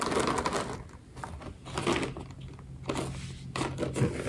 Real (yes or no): yes